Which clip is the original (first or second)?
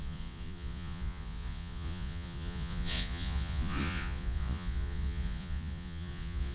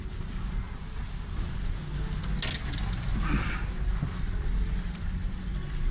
second